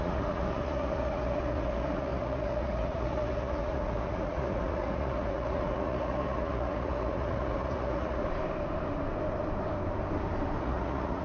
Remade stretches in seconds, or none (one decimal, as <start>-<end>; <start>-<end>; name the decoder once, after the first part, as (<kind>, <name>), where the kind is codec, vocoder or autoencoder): 0.0-8.2 (vocoder, Vocos); 10.6-11.2

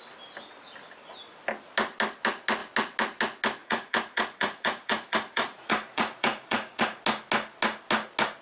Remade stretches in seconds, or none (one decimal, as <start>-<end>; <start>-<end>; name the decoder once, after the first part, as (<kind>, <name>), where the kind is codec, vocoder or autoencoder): 3.6-7.0 (vocoder, Vocos)

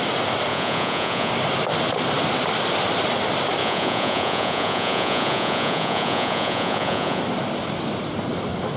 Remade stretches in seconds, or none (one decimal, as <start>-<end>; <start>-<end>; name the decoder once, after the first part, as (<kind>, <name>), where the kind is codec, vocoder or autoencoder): 0.5-1.3 (vocoder, Vocos); 3.6-7.2

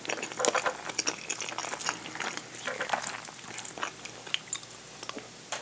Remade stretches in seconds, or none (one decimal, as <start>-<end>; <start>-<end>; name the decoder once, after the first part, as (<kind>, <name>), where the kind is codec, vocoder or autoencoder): none

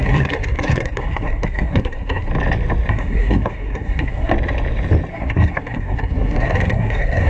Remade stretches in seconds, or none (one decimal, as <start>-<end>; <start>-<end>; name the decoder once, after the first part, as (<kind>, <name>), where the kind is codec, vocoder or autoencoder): 0.0-2.3 (codec, SNAC); 2.9-4.3; 5.1-7.3